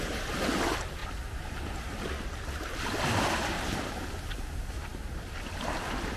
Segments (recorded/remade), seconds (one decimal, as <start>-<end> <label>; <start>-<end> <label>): 0.0-6.2 recorded